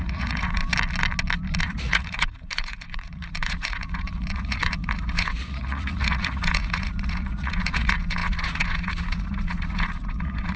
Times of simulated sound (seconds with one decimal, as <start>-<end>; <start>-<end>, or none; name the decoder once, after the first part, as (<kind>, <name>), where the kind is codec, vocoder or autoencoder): 0.0-0.6 (vocoder, Vocos); 1.6-10.6